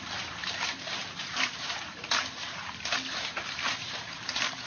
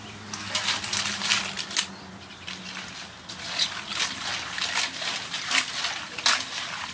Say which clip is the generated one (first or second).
first